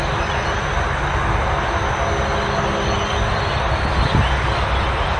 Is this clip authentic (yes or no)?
yes